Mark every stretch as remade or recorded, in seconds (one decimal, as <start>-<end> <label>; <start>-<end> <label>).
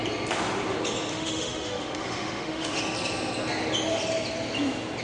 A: 0.0-1.1 recorded; 1.1-2.8 remade; 2.8-5.0 recorded